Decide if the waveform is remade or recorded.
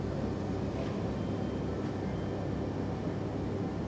recorded